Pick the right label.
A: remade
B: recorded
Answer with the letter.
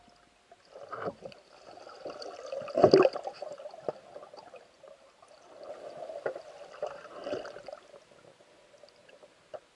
B